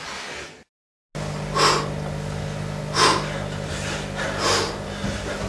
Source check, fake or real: real